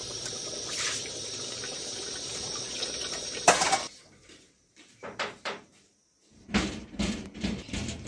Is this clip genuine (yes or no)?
no